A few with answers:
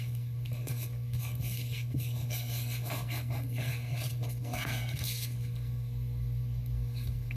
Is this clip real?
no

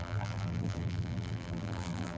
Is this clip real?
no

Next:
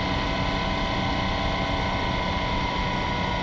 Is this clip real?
yes